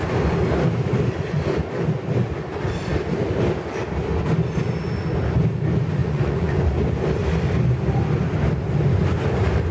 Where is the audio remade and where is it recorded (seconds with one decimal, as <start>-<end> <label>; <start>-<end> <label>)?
0.0-6.0 recorded; 6.0-6.6 remade; 6.6-9.7 recorded